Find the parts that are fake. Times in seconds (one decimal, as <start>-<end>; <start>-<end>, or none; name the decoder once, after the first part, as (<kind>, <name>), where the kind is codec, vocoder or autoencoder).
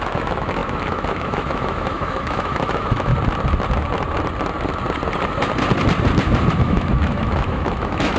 0.0-3.1 (autoencoder, DAC-VAE); 6.5-8.2